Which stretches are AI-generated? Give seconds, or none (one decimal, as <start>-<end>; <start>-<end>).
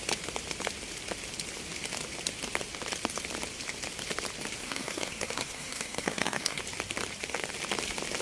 4.6-6.6